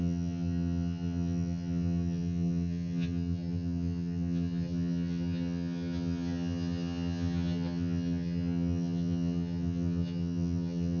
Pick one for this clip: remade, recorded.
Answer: remade